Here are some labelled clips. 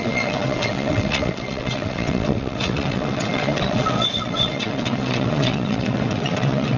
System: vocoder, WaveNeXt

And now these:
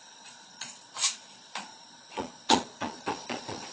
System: vocoder, Vocos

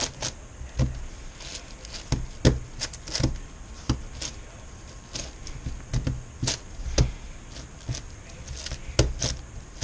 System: none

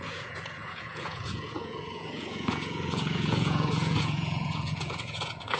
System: vocoder, Vocos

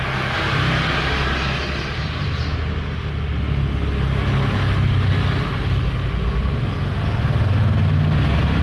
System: none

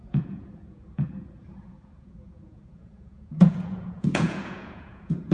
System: vocoder, Vocos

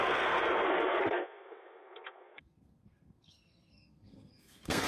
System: codec, SNAC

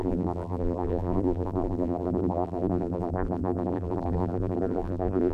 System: vocoder, BigVGAN v2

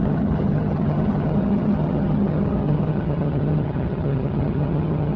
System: vocoder, HiFi-GAN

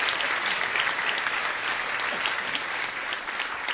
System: none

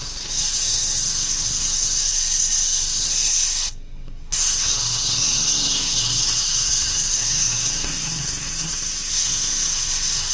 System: codec, SNAC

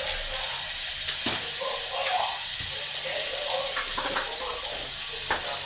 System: none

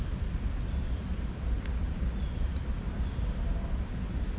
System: none